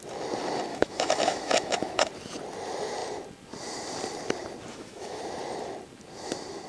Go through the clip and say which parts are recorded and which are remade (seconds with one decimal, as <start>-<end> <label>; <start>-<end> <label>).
0.0-0.7 recorded; 0.7-2.1 remade; 2.1-4.7 recorded; 4.7-5.2 remade; 5.2-6.7 recorded

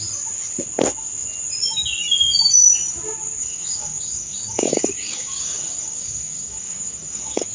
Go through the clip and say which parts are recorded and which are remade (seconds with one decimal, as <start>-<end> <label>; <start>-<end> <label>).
0.0-3.4 recorded; 3.4-7.5 remade

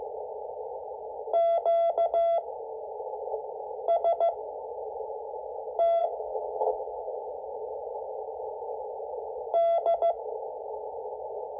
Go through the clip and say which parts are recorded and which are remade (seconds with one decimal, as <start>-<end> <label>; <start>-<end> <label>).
0.0-6.0 recorded; 6.0-7.2 remade; 7.2-11.6 recorded

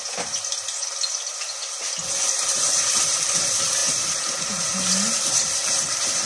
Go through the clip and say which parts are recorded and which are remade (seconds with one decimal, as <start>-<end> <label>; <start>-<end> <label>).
0.0-2.5 recorded; 2.5-6.3 remade

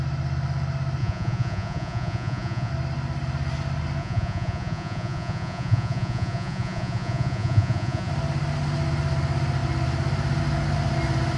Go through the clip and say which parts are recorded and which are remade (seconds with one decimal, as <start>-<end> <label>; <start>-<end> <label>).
0.0-1.0 recorded; 1.0-2.7 remade; 2.7-4.0 recorded; 4.0-8.1 remade; 8.1-11.4 recorded